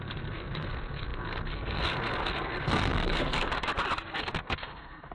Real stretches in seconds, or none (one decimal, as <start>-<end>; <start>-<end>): 3.5-4.4